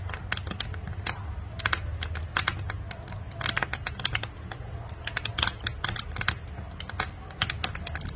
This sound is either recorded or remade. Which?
recorded